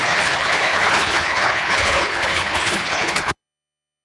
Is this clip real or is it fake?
fake